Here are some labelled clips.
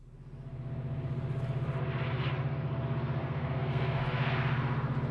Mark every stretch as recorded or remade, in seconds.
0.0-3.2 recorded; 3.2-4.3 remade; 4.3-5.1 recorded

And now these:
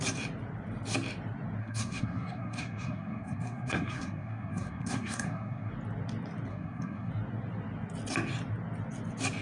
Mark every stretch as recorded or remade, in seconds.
0.0-1.6 recorded; 1.6-5.7 remade; 5.7-6.5 recorded; 6.5-7.1 remade; 7.1-9.4 recorded

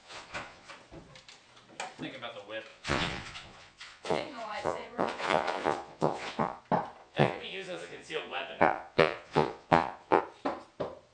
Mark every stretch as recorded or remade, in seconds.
0.0-0.7 remade; 0.7-2.7 recorded; 2.7-6.6 remade; 6.6-7.0 recorded; 7.0-10.2 remade; 10.2-11.1 recorded

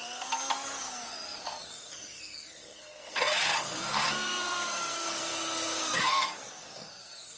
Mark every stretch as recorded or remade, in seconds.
0.0-7.4 remade

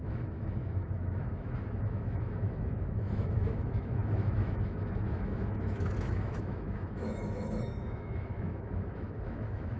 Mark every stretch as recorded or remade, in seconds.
0.0-9.8 remade

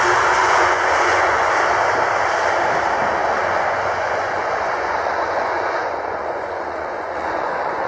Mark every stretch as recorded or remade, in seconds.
0.0-0.4 recorded; 0.4-1.5 remade; 1.5-3.2 recorded; 3.2-7.9 remade

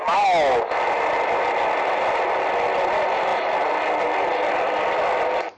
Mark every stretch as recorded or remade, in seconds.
0.0-5.6 recorded